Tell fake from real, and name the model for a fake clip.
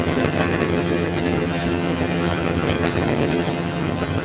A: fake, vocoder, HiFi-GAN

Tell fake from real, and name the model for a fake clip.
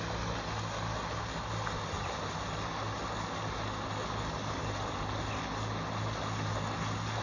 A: real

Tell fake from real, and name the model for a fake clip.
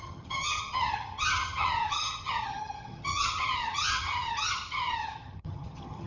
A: fake, vocoder, HiFi-GAN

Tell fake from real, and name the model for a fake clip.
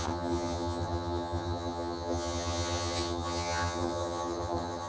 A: fake, vocoder, HiFi-GAN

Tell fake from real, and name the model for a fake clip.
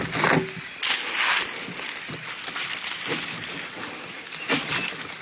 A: real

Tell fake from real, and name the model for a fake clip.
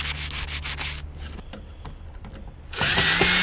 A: real